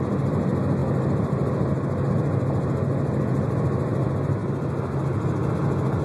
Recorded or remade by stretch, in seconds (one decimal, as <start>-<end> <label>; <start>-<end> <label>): 0.0-6.0 recorded